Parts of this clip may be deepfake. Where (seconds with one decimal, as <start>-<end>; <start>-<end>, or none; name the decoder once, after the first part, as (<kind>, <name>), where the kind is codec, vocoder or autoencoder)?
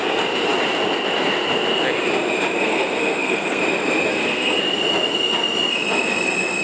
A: 2.6-3.6 (codec, SNAC); 4.1-4.6